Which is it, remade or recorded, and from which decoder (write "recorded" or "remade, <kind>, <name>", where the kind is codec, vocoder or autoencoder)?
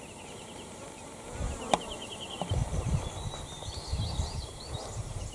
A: remade, vocoder, BigVGAN v2